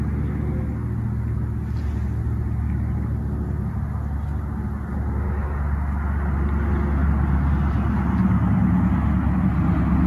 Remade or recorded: recorded